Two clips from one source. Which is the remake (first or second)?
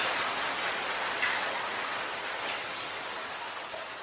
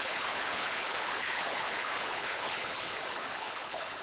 second